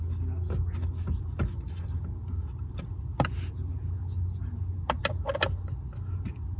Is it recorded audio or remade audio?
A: recorded